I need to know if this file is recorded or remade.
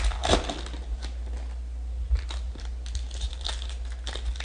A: recorded